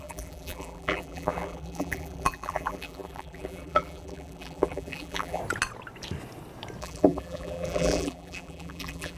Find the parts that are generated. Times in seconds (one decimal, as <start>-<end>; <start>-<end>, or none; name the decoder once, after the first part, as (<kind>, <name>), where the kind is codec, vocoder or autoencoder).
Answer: 0.0-5.4 (vocoder, BigVGAN v2); 6.8-9.2